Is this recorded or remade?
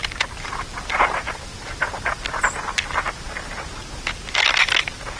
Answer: recorded